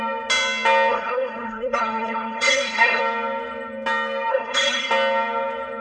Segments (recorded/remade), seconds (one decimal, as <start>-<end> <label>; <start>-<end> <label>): 0.0-0.9 recorded; 0.9-3.0 remade; 3.0-4.3 recorded; 4.3-4.9 remade; 4.9-5.8 recorded